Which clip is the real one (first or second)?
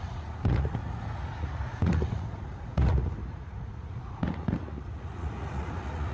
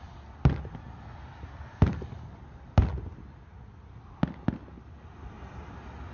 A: second